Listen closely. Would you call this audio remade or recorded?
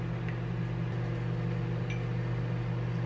recorded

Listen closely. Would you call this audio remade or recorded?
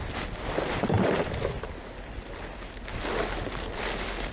recorded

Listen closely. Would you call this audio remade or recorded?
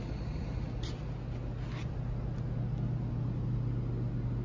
recorded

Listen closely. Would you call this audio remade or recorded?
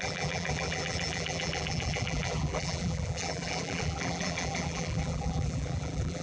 remade